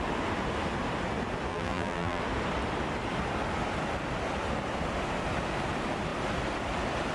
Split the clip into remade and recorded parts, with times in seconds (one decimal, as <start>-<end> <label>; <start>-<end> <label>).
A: 0.0-1.5 recorded; 1.5-2.2 remade; 2.2-7.1 recorded